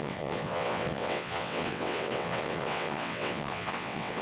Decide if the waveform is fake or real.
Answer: fake